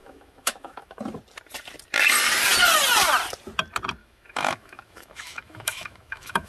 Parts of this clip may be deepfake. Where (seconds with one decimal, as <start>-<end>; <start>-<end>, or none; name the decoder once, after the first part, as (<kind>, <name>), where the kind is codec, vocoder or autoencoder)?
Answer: 0.0-1.0 (autoencoder, DAC-VAE); 4.0-6.5